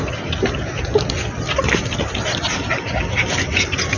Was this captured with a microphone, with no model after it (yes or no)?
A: yes